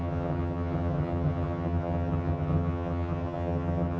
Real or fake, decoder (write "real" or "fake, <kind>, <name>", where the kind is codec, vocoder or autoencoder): fake, vocoder, HiFi-GAN